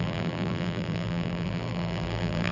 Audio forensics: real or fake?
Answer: fake